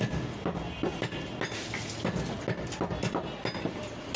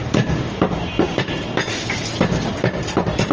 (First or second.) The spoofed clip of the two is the second